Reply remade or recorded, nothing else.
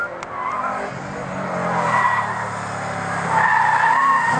recorded